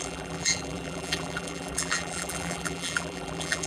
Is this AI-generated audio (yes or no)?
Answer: yes